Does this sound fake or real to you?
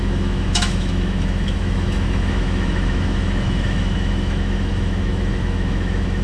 fake